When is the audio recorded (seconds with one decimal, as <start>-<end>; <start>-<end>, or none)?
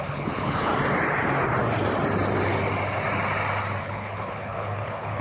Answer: 0.7-3.8